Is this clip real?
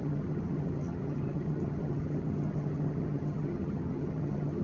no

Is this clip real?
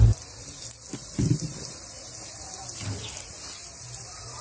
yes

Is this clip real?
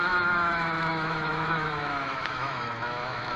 no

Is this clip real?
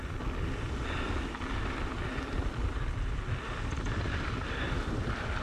yes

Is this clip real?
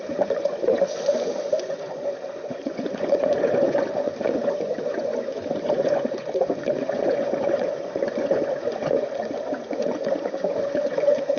no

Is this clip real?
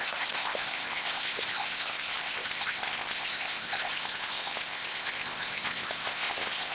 no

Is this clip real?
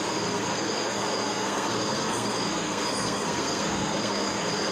no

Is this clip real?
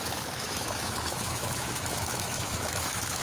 no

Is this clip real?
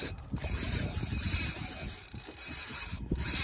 no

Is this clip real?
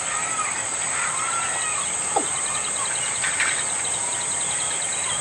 yes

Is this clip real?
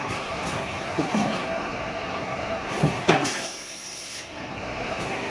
no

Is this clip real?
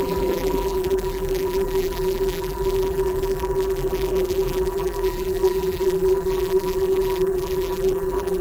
no